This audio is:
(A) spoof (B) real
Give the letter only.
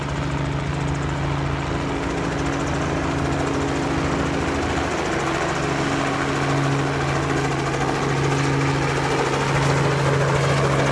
B